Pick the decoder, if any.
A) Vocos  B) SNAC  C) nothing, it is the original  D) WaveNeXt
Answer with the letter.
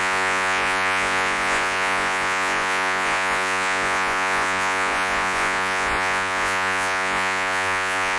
A